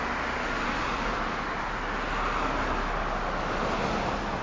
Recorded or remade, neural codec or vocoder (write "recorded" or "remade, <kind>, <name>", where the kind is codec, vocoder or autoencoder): recorded